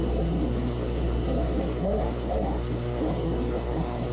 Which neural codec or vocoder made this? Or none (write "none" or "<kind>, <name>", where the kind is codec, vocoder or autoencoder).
codec, SNAC